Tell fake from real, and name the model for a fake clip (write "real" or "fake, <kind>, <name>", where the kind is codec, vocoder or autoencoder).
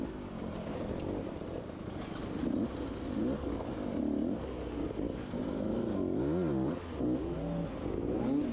real